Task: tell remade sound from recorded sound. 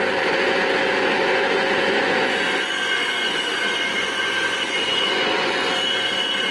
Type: remade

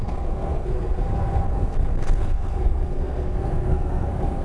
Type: remade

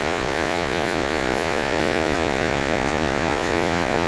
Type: remade